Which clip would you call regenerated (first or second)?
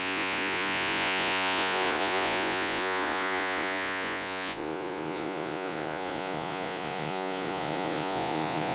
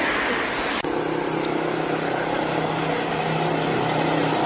first